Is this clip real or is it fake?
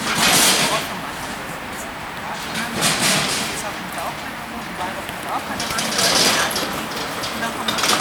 real